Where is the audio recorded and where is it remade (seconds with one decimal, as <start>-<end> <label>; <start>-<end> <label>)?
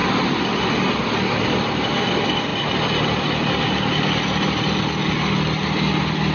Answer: 0.0-6.3 recorded